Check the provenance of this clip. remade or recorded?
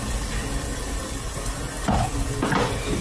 recorded